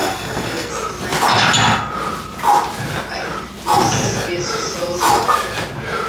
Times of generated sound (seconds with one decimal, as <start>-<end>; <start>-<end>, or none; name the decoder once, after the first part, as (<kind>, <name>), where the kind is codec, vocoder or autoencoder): 0.0-0.7 (codec, SNAC)